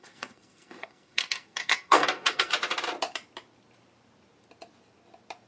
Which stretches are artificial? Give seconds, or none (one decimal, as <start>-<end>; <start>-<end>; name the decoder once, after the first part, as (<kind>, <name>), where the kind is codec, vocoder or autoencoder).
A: 0.0-2.5 (codec, SNAC)